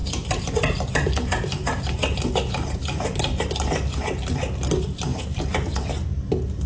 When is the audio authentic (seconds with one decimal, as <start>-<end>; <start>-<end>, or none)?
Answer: 0.0-6.7